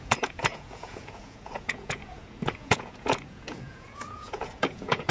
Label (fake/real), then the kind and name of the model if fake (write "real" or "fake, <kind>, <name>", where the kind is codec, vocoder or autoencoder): fake, vocoder, Vocos